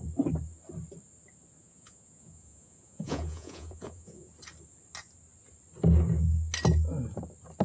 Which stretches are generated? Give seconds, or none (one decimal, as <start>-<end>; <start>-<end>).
1.6-4.3